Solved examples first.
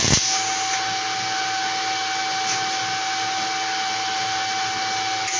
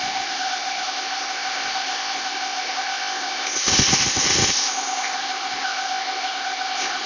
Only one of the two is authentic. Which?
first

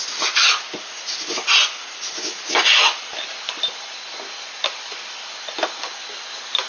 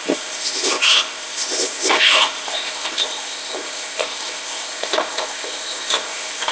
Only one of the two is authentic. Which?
first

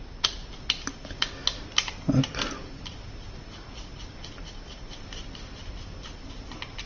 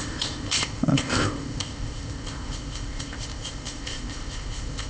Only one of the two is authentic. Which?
first